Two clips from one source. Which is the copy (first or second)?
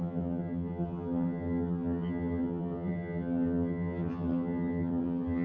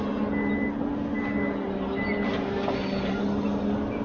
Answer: first